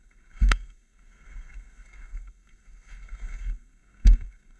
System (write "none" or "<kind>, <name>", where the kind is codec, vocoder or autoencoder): codec, SNAC